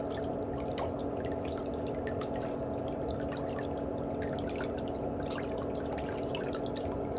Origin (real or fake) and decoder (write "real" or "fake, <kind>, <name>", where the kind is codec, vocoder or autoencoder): real